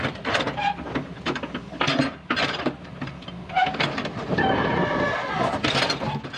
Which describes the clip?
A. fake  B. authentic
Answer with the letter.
B